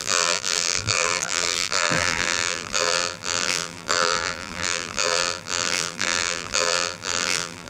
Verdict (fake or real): fake